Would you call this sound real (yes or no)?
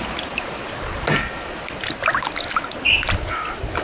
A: yes